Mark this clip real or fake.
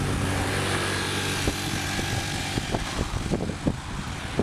real